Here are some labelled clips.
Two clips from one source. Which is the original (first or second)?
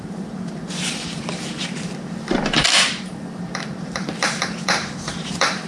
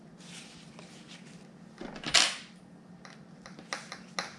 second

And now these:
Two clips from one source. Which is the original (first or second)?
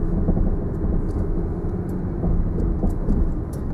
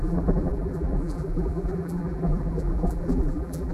first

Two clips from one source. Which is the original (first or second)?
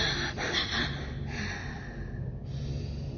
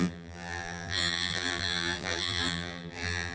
first